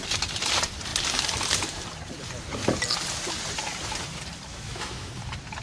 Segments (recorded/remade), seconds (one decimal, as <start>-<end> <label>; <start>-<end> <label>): 0.0-4.5 recorded; 4.5-5.1 remade; 5.1-5.6 recorded